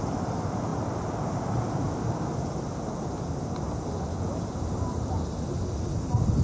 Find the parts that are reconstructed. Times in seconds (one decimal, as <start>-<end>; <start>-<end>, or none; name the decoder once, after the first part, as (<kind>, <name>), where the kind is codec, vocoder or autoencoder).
none